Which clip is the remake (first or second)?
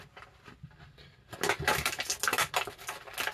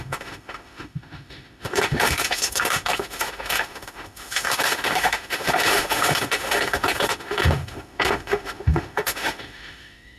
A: second